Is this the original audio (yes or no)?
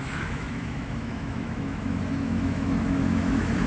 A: no